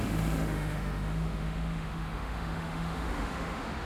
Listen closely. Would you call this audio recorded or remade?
remade